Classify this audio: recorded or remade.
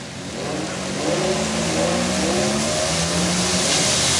recorded